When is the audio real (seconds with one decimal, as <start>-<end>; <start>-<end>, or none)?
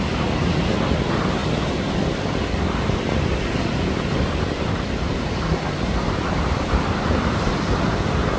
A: none